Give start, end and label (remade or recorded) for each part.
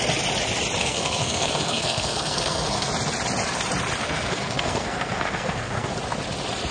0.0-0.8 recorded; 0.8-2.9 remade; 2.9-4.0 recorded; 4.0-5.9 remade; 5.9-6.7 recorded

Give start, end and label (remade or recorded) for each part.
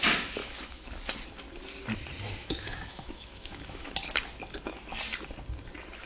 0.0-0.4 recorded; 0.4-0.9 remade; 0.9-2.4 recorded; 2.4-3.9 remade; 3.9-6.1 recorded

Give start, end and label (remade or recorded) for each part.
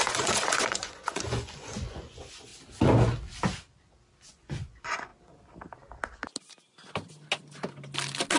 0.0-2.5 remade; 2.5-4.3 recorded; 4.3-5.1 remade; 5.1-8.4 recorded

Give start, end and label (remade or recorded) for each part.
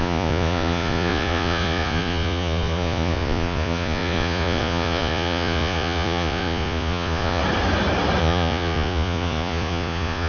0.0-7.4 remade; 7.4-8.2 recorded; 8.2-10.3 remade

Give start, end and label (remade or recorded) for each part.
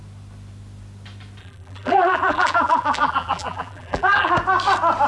0.0-1.4 recorded; 1.4-4.3 remade; 4.3-5.1 recorded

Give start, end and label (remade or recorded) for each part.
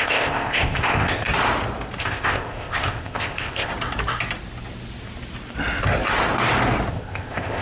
0.0-1.3 remade; 1.3-2.0 recorded; 2.0-3.7 remade; 3.7-6.9 recorded; 6.9-7.6 remade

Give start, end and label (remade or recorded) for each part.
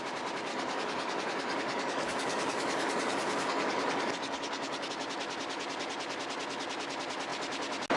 0.0-0.5 recorded; 0.5-4.9 remade; 4.9-8.0 recorded